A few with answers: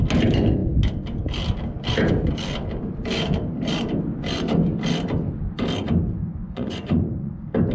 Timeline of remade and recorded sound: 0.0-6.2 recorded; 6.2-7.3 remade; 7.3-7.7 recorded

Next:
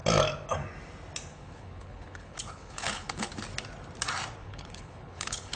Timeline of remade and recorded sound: 0.0-1.3 recorded; 1.3-3.3 remade; 3.3-4.4 recorded; 4.4-5.6 remade